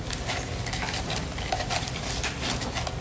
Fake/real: real